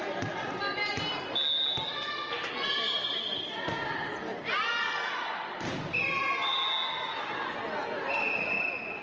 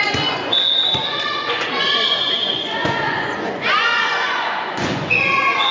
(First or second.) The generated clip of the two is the second